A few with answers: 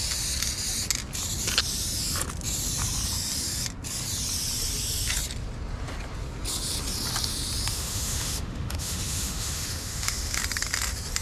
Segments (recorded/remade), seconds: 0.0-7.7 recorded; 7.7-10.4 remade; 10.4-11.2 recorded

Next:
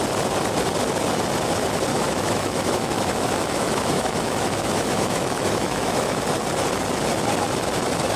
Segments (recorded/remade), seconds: 0.0-1.9 recorded; 1.9-6.2 remade; 6.2-8.2 recorded

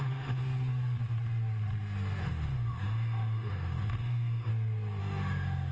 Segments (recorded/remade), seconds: 0.0-0.4 remade; 0.4-2.2 recorded; 2.2-4.5 remade; 4.5-5.0 recorded; 5.0-5.7 remade